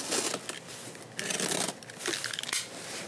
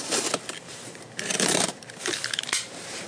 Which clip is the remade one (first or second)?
second